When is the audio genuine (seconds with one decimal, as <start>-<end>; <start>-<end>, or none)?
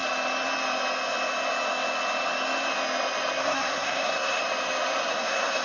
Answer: 0.0-3.4; 4.4-5.1